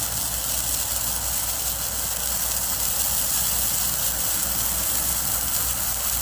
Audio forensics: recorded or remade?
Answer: recorded